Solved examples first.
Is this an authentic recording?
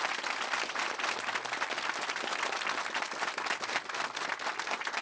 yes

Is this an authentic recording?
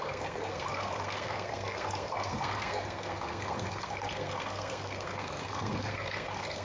no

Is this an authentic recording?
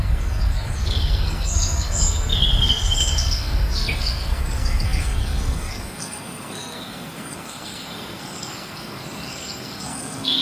no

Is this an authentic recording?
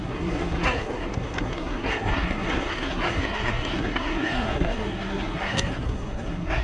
no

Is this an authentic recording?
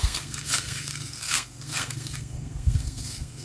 no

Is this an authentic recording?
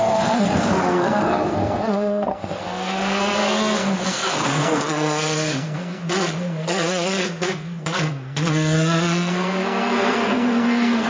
no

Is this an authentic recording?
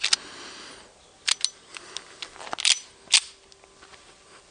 yes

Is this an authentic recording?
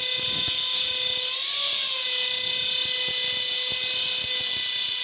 yes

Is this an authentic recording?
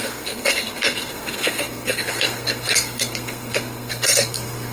no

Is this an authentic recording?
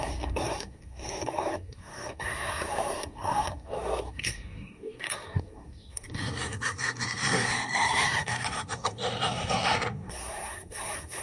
no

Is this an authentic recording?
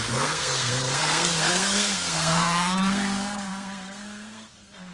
no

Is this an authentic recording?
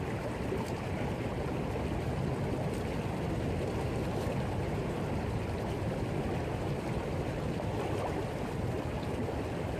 yes